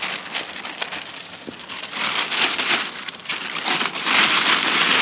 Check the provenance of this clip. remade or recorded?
recorded